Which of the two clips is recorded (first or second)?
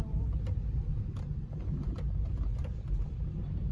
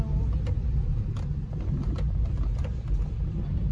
second